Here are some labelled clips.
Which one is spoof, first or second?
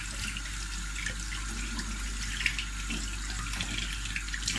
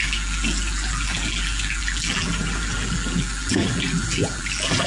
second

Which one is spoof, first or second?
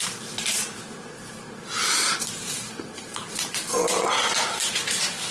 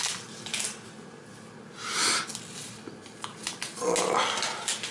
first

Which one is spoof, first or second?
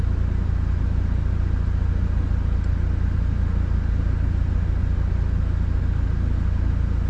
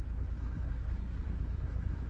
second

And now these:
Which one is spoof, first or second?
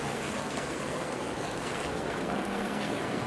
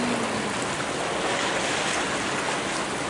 first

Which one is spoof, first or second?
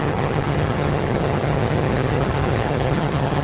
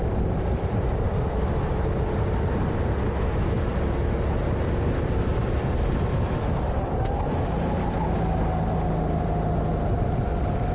first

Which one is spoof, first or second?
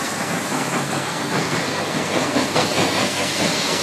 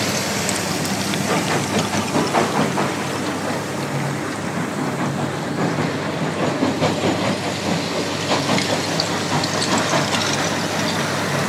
first